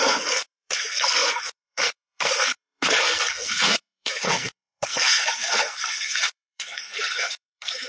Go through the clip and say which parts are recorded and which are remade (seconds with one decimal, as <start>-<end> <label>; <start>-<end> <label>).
0.0-7.9 remade